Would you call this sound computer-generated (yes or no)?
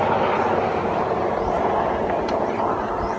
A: no